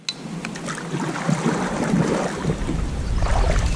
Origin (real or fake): real